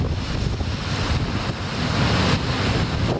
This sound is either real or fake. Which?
real